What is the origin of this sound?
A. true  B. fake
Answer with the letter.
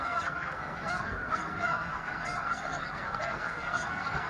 B